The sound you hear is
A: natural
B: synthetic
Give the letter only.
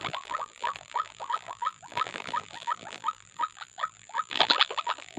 B